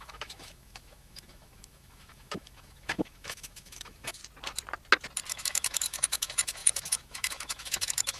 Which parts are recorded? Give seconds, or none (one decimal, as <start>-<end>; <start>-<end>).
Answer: 4.2-5.3